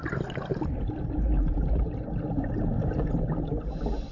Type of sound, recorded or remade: recorded